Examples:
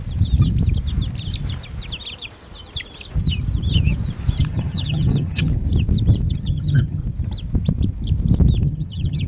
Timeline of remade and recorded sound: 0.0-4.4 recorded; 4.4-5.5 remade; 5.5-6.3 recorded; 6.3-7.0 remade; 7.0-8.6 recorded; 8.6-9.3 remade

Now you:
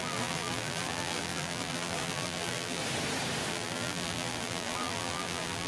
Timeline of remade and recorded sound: 0.0-2.8 remade; 2.8-3.5 recorded; 3.5-5.7 remade

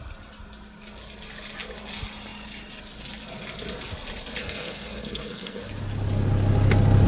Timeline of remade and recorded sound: 0.0-4.4 recorded; 4.4-5.6 remade; 5.6-7.1 recorded

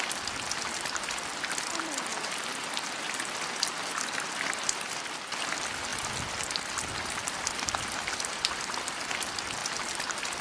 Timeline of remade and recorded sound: 0.0-10.4 recorded

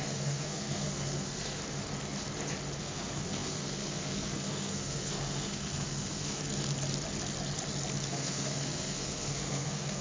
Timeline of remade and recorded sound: 0.0-1.6 remade; 1.6-2.8 recorded; 2.8-6.4 remade; 6.4-8.1 recorded; 8.1-10.0 remade

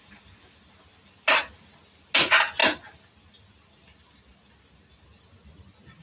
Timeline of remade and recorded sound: 0.0-6.0 recorded